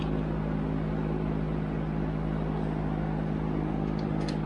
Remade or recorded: recorded